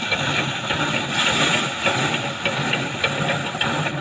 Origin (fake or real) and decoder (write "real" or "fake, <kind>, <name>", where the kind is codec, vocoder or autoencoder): real